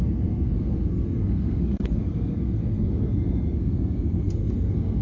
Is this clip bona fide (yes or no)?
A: no